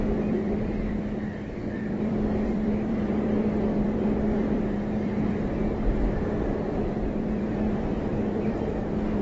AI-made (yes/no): yes